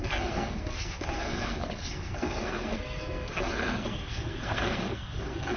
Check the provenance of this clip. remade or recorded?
remade